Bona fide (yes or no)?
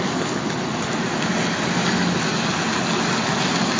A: yes